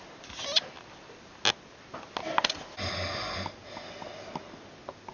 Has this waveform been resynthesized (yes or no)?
no